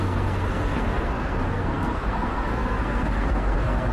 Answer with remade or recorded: remade